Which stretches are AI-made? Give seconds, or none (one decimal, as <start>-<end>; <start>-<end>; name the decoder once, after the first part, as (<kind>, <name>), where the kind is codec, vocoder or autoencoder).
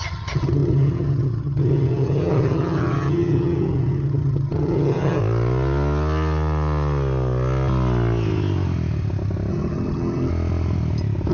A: 0.0-5.2 (vocoder, HiFi-GAN); 9.5-10.3